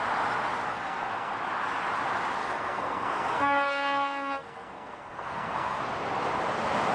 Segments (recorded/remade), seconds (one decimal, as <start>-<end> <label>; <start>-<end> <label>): 0.0-0.7 recorded; 0.7-1.3 remade; 1.3-2.4 recorded; 2.4-5.8 remade; 5.8-6.9 recorded

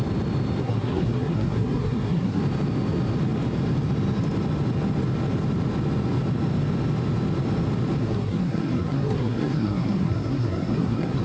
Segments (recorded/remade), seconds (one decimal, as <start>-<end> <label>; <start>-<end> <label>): 0.0-0.6 recorded; 0.6-2.4 remade; 2.4-8.0 recorded; 8.0-11.2 remade

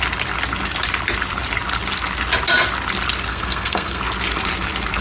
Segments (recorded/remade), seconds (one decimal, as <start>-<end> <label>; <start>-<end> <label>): 0.0-3.3 recorded; 3.3-4.0 remade; 4.0-5.0 recorded

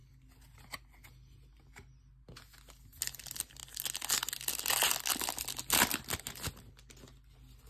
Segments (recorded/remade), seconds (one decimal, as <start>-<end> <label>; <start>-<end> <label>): 0.0-7.7 recorded

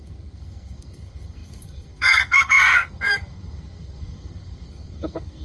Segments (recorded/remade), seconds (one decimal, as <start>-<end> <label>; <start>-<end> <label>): 0.0-5.4 remade

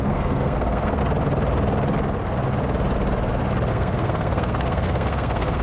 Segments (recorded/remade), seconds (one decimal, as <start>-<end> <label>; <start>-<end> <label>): 0.0-1.0 remade; 1.0-3.7 recorded; 3.7-5.6 remade

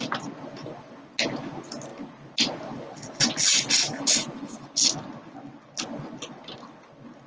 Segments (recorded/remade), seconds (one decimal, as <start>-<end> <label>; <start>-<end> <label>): 0.0-7.3 recorded

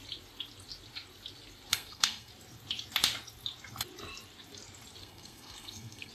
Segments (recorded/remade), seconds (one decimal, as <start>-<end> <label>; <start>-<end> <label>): 0.0-1.7 recorded; 1.7-2.3 remade; 2.3-5.0 recorded; 5.0-6.1 remade